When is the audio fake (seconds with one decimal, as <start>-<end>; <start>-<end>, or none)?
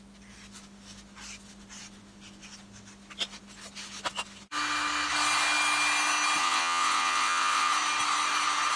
6.4-7.7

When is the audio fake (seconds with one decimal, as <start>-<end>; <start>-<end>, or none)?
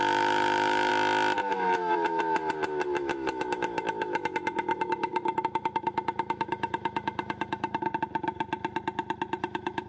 0.0-0.9; 1.5-7.9; 9.4-9.9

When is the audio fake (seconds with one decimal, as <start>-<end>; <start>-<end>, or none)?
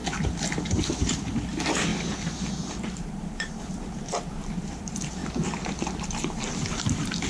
0.9-5.2; 5.8-7.3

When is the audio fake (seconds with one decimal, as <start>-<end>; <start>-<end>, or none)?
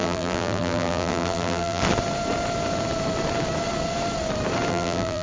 0.0-1.8; 4.7-5.2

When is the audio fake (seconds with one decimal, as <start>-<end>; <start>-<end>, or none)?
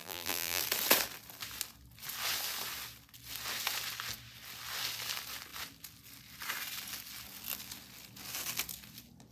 0.0-0.6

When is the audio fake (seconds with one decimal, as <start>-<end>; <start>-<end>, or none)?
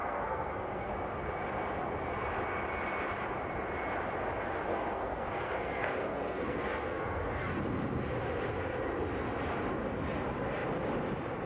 0.0-0.9; 4.7-7.6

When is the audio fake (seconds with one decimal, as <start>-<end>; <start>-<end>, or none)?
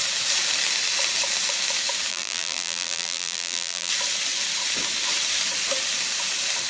2.1-3.9